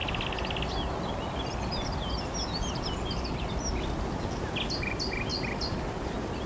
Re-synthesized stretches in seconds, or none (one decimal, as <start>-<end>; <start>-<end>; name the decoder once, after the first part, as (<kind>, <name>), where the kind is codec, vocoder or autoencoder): none